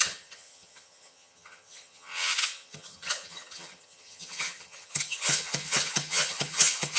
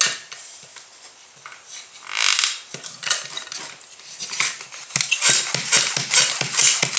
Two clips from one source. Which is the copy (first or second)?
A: first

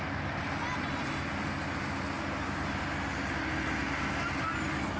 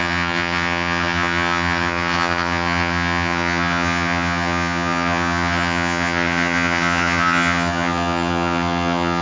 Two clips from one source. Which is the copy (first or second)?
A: second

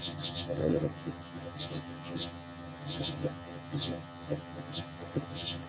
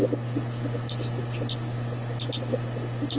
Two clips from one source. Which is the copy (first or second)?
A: first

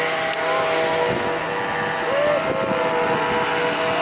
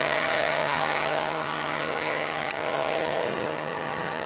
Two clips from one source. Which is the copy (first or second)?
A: second